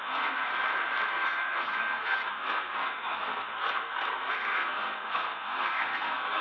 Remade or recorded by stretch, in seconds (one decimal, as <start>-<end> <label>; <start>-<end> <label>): 0.0-0.5 remade; 0.5-1.1 recorded; 1.1-6.4 remade